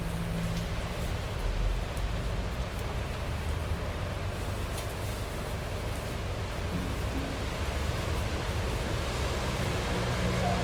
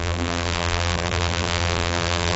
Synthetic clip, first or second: second